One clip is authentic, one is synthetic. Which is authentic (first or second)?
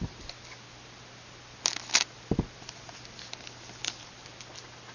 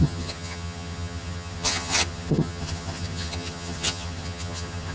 first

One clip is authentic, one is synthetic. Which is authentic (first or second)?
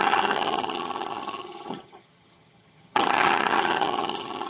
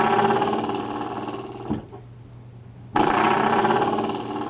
second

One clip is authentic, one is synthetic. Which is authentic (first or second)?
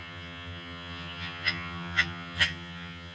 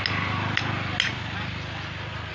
second